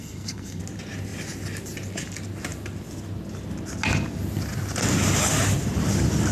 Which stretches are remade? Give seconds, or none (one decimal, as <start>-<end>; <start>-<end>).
0.0-0.6